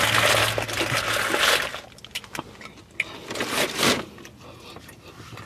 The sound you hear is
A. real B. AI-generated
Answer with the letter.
A